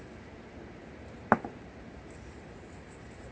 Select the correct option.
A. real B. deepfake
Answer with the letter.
A